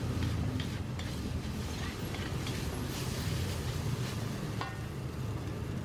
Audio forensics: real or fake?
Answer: real